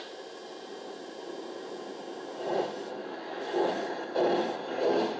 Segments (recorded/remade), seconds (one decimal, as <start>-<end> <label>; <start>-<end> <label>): 0.0-3.0 recorded; 3.0-3.8 remade; 3.8-5.2 recorded